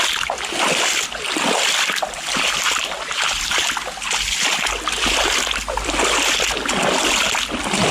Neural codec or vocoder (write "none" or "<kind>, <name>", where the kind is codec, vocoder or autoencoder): none